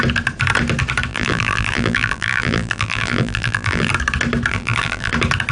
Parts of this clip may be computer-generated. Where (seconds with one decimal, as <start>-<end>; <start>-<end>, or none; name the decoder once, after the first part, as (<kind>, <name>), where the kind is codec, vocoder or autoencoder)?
1.1-3.9 (vocoder, BigVGAN v2); 4.5-5.1